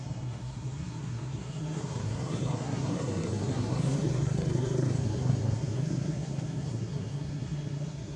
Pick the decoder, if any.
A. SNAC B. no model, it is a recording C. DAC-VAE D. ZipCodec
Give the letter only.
A